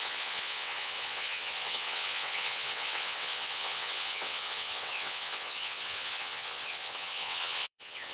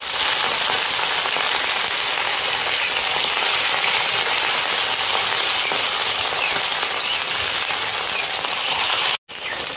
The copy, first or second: first